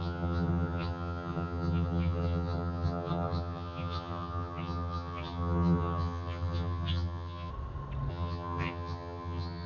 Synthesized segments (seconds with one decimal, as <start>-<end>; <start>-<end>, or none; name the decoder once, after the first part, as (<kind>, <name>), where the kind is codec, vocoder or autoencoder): 0.0-7.5 (vocoder, HiFi-GAN); 8.1-9.7